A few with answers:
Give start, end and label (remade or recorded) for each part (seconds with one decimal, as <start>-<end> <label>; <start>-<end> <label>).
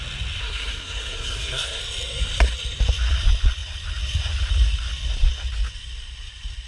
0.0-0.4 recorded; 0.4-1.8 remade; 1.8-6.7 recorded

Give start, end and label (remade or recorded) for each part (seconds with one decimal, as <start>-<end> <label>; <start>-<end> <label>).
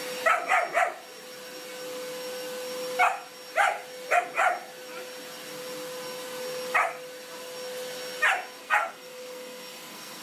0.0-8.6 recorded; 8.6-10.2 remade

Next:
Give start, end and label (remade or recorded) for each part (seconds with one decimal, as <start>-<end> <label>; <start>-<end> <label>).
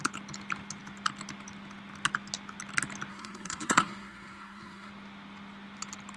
0.0-3.1 recorded; 3.1-4.9 remade; 4.9-6.2 recorded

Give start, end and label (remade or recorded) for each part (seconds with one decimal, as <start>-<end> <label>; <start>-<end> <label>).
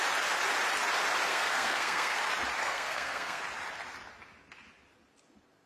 0.0-1.3 recorded; 1.3-2.2 remade; 2.2-2.6 recorded; 2.6-3.4 remade; 3.4-5.7 recorded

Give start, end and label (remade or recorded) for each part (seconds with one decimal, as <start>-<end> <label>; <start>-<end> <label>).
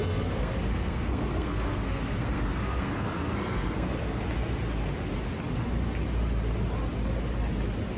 0.0-4.2 remade; 4.2-8.0 recorded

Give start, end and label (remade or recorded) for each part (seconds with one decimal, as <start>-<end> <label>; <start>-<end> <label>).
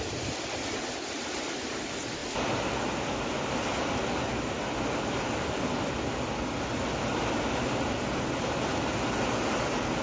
0.0-10.0 recorded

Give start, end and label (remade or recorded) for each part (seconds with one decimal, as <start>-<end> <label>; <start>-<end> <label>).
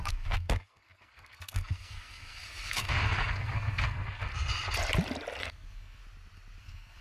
0.0-4.3 remade; 4.3-5.4 recorded; 5.4-6.0 remade; 6.0-6.6 recorded; 6.6-7.0 remade